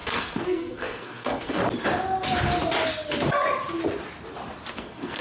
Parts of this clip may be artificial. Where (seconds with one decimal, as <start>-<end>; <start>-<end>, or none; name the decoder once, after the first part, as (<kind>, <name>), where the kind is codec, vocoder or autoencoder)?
0.0-1.6 (codec, SNAC); 4.7-5.2